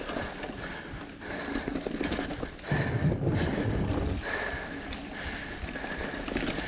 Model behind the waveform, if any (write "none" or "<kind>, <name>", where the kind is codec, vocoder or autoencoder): none